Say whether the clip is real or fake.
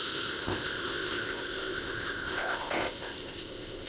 fake